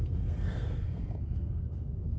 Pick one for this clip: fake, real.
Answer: fake